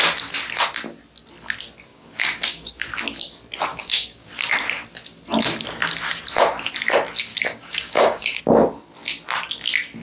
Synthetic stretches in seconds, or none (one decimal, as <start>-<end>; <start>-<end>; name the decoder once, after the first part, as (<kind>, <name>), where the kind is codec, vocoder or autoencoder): 1.9-2.7 (codec, DAC); 3.7-4.3; 7.3-8.4